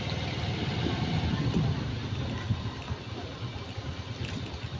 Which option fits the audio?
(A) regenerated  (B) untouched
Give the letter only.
B